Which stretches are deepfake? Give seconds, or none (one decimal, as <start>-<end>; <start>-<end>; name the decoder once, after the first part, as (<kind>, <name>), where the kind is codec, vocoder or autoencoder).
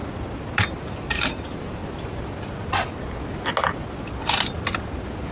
0.7-1.8 (vocoder, BigVGAN v2)